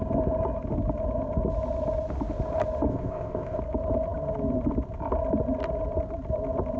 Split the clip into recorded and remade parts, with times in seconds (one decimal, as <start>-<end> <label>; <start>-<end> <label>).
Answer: 0.0-2.9 recorded; 2.9-3.6 remade; 3.6-6.8 recorded